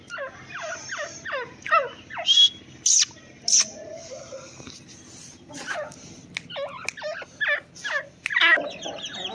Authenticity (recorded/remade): recorded